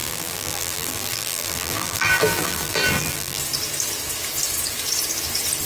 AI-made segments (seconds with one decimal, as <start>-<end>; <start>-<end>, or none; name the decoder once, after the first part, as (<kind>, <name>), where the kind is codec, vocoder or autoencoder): 0.0-3.4 (vocoder, BigVGAN v2)